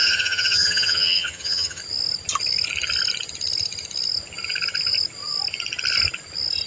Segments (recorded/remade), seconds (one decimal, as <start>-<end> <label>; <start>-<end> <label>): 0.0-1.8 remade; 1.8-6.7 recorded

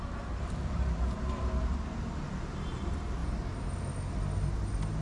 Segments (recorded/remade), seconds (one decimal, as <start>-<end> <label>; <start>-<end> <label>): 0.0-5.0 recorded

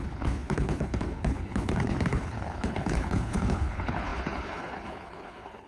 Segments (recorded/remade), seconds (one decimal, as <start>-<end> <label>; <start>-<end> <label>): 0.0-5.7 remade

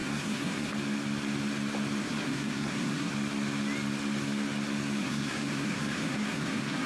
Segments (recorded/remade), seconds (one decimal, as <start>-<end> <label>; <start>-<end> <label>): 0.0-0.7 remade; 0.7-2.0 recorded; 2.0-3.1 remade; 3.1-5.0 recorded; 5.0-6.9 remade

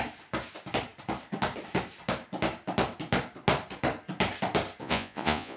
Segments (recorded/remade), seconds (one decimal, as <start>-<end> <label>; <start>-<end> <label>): 0.0-4.8 recorded; 4.8-5.6 remade